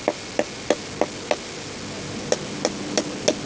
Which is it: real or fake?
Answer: real